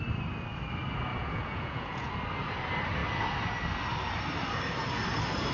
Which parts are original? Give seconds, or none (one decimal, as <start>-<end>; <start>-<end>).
0.0-1.1; 2.1-5.5